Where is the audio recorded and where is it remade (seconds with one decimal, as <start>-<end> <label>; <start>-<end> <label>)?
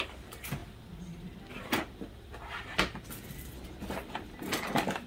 0.0-5.1 recorded